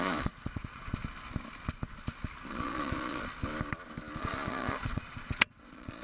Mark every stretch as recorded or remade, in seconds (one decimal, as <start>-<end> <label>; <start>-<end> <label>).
0.0-1.0 remade; 1.0-2.5 recorded; 2.5-3.3 remade; 3.3-4.2 recorded; 4.2-6.0 remade